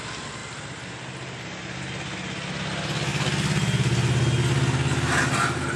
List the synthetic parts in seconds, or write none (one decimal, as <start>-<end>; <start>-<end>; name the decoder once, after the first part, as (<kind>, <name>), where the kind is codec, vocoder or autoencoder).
none